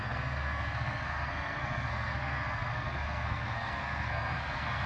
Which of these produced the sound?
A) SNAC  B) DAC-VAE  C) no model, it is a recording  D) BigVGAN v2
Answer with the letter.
A